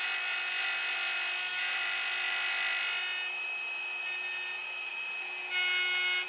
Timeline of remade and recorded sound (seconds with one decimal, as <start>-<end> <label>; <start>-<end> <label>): 0.0-6.3 recorded